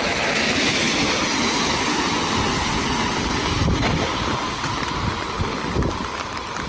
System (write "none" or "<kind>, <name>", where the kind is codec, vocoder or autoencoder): none